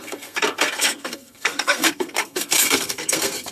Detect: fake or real fake